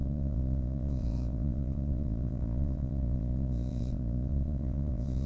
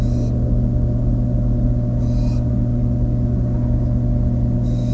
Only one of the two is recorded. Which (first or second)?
second